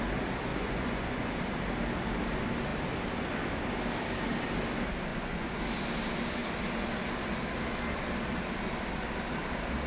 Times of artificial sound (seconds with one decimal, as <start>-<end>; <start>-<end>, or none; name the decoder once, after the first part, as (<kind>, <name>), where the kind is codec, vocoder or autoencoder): 0.5-1.3 (vocoder, Vocos); 5.1-5.6